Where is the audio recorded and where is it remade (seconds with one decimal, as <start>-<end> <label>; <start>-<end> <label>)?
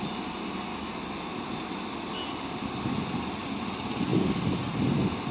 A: 0.0-0.7 recorded; 0.7-1.4 remade; 1.4-5.3 recorded